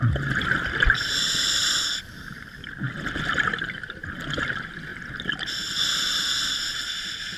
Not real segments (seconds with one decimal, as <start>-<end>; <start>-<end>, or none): none